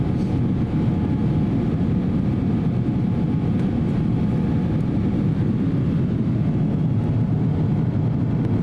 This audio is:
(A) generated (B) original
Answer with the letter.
B